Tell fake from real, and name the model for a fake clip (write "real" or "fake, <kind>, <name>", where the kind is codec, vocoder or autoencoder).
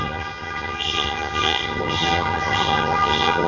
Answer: fake, vocoder, HiFi-GAN